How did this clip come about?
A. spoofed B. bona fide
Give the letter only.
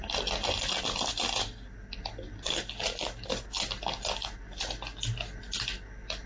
B